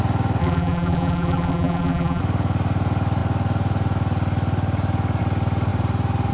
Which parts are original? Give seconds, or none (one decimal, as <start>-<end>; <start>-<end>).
0.0-0.4; 2.2-6.3